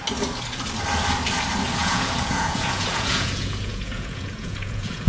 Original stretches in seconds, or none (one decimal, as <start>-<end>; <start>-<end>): 0.0-1.8